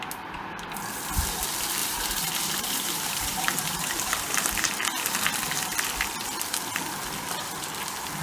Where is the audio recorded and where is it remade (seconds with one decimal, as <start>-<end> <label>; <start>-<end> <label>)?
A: 0.0-1.8 recorded; 1.8-4.7 remade; 4.7-8.2 recorded